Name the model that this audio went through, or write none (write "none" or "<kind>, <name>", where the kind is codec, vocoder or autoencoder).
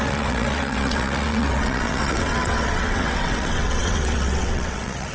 vocoder, WaveNeXt